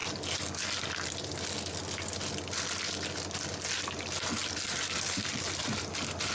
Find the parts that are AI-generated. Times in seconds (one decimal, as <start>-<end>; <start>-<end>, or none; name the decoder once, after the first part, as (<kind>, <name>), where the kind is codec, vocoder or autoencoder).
4.4-5.6 (vocoder, BigVGAN v2)